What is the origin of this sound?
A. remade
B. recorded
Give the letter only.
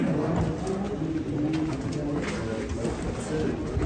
B